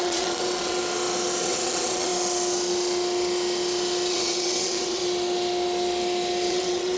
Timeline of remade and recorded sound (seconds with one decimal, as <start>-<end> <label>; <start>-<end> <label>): 0.0-0.8 remade; 0.8-1.4 recorded; 1.4-2.1 remade; 2.1-4.1 recorded; 4.1-5.0 remade; 5.0-6.5 recorded; 6.5-7.0 remade